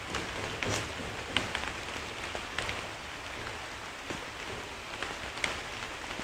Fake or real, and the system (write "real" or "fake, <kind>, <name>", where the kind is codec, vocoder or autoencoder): real